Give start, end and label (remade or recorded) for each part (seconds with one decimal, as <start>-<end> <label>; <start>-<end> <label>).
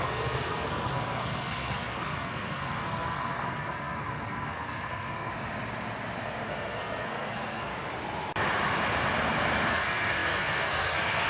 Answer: 0.0-5.3 remade; 5.3-6.4 recorded; 6.4-7.7 remade; 7.7-9.7 recorded; 9.7-11.3 remade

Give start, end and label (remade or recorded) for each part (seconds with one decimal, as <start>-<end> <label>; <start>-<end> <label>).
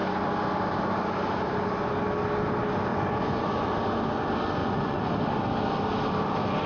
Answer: 0.0-2.9 recorded; 2.9-3.6 remade; 3.6-4.6 recorded; 4.6-5.1 remade; 5.1-6.7 recorded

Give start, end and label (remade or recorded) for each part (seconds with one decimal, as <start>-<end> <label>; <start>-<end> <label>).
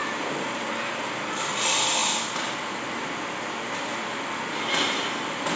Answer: 0.0-0.7 remade; 0.7-5.6 recorded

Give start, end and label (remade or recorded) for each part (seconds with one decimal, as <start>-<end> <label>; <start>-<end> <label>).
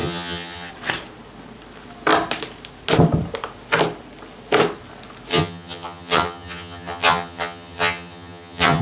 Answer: 0.0-0.7 remade; 0.7-5.3 recorded; 5.3-8.8 remade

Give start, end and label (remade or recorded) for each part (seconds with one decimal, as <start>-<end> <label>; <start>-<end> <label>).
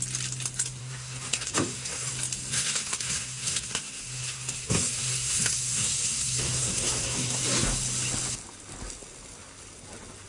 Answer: 0.0-0.8 recorded; 0.8-2.1 remade; 2.1-2.5 recorded; 2.5-7.4 remade; 7.4-10.3 recorded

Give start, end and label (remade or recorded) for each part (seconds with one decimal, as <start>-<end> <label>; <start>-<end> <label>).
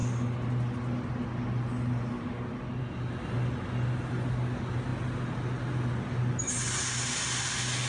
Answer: 0.0-7.9 recorded